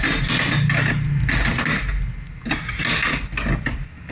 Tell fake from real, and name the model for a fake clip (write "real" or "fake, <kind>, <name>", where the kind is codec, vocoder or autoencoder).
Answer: real